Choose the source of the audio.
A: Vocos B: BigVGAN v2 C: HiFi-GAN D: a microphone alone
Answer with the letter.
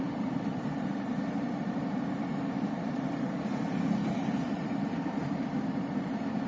B